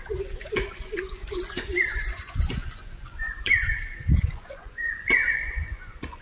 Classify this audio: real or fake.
fake